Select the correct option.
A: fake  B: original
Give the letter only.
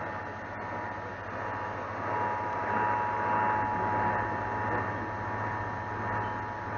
B